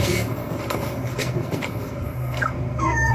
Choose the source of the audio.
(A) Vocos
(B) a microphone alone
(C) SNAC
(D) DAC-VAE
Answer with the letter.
C